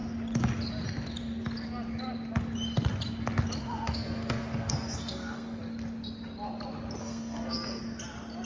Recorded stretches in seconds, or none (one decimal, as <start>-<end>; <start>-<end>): 0.0-3.6; 5.6-7.0; 7.8-8.4